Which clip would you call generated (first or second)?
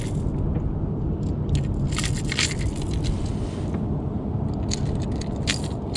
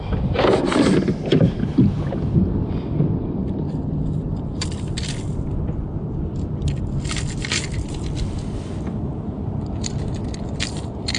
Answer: second